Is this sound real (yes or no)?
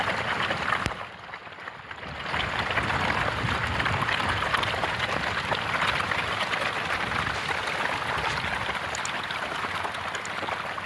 yes